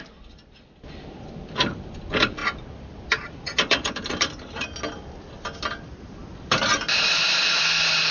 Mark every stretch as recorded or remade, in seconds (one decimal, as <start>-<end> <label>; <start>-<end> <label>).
0.0-6.7 recorded; 6.7-7.4 remade; 7.4-8.1 recorded